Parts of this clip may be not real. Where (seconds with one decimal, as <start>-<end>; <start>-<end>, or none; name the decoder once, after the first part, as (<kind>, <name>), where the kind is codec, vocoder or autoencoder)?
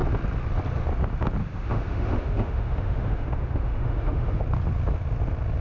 1.4-4.4 (autoencoder, DAC-VAE)